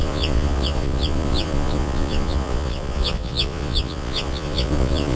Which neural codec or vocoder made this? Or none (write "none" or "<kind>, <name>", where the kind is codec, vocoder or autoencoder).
vocoder, Vocos